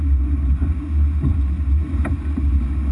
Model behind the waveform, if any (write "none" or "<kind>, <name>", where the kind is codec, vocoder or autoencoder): none